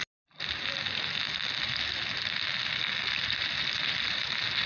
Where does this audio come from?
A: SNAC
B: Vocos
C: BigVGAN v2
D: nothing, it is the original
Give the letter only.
D